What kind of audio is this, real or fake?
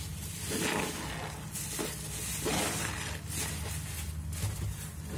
real